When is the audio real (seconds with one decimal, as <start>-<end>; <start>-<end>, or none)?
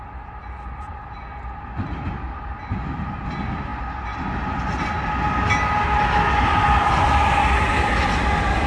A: 0.0-8.7